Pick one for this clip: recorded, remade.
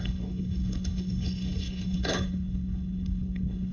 remade